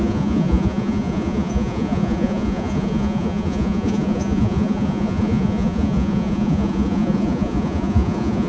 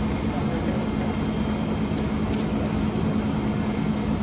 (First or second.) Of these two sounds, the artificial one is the first